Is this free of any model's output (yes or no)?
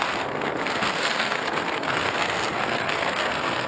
no